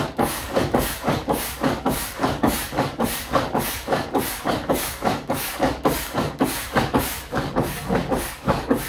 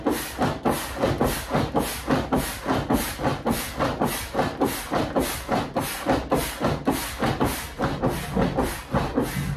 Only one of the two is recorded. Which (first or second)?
second